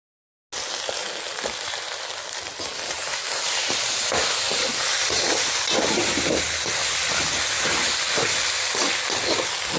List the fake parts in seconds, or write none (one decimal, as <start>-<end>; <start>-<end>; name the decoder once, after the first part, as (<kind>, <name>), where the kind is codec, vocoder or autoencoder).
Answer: none